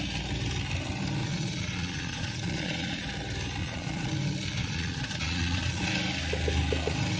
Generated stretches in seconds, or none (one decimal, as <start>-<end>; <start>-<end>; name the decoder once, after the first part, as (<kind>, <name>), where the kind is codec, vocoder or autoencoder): 1.2-3.1 (vocoder, Vocos); 3.6-4.1; 4.6-5.8